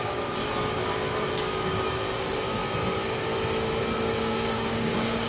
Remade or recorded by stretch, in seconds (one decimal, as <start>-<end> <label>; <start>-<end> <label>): 0.0-0.4 remade; 0.4-1.4 recorded; 1.4-2.6 remade; 2.6-4.2 recorded; 4.2-5.3 remade